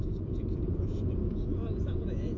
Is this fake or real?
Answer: fake